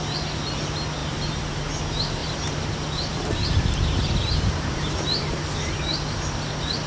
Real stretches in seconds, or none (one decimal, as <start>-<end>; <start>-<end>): 0.0-1.0; 1.7-2.2; 5.4-6.9